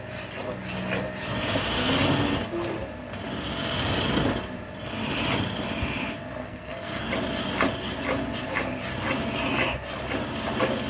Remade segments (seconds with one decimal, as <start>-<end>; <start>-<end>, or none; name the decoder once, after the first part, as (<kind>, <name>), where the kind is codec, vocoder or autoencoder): 6.4-7.1 (codec, SNAC)